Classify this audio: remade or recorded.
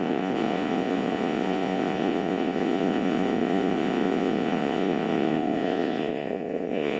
remade